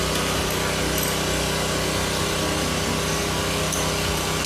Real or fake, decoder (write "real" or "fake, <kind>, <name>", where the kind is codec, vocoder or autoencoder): real